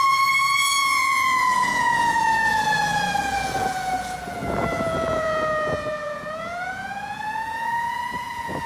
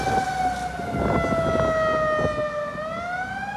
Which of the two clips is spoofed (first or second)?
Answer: first